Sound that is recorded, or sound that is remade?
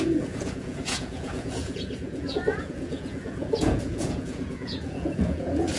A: remade